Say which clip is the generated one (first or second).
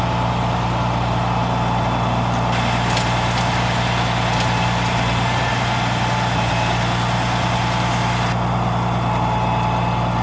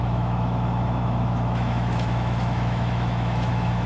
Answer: second